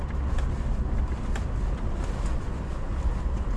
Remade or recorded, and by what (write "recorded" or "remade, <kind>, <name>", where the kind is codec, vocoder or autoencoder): recorded